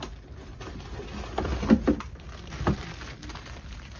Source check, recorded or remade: recorded